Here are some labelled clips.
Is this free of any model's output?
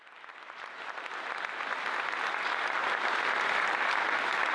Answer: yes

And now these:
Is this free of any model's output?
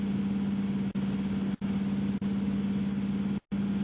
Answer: yes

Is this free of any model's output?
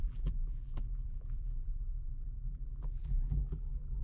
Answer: no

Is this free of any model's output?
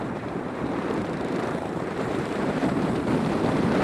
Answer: no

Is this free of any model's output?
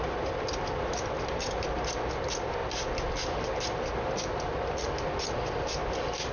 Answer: yes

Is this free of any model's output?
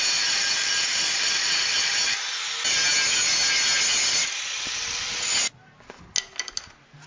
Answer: yes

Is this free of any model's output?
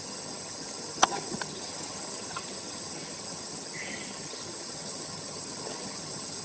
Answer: no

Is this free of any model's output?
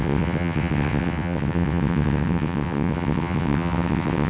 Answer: no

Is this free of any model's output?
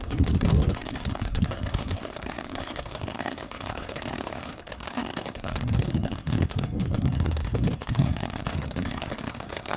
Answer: no